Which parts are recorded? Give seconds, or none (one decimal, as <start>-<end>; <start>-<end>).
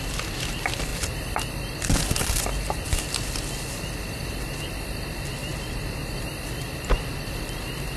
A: 0.0-8.0